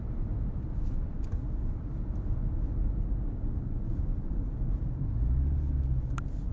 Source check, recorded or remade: recorded